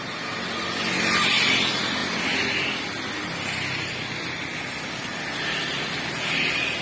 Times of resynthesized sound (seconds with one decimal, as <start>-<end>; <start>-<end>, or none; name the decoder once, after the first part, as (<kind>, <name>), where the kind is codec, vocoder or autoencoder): none